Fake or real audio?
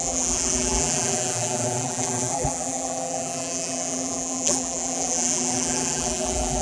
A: fake